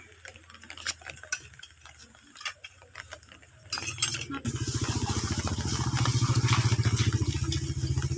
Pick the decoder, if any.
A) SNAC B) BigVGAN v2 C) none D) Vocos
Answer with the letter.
C